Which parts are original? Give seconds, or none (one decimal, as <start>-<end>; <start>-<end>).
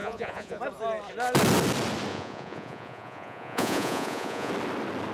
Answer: 0.6-2.1; 4.5-5.1